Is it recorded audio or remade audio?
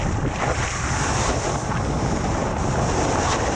recorded